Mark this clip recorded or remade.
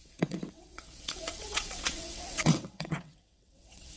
remade